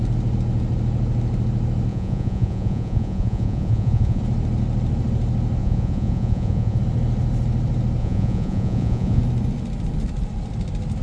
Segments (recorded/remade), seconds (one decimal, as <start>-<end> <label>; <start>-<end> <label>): 0.0-1.9 recorded; 1.9-4.2 remade; 4.2-5.6 recorded; 5.6-6.8 remade; 6.8-8.0 recorded; 8.0-9.2 remade; 9.2-11.0 recorded